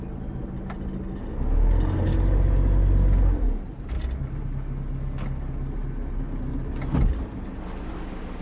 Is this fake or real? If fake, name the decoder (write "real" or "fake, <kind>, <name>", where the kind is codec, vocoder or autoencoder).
real